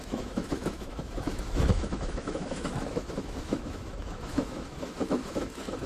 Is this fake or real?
fake